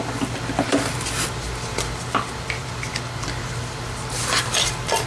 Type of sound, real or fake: real